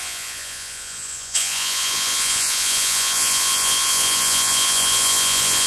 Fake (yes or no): yes